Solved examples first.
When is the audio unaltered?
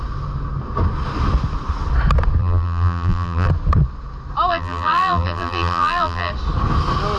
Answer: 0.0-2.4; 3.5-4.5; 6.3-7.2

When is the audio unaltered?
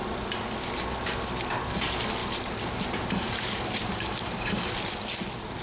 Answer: 0.0-2.2; 4.5-5.6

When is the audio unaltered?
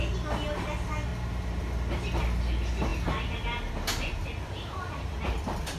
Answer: 0.0-5.8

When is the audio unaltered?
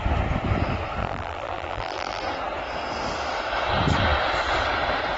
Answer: 0.0-1.0; 2.2-5.2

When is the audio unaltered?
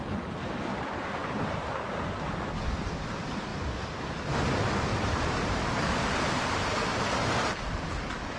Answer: 0.0-1.2; 1.8-3.5; 4.1-4.9; 5.9-8.4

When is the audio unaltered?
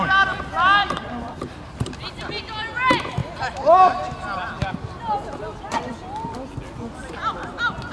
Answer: 0.0-0.8; 2.4-7.9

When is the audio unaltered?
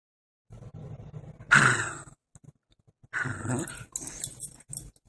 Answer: 0.0-5.1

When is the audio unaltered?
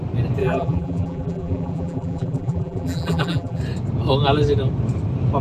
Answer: 0.0-0.4; 3.6-5.4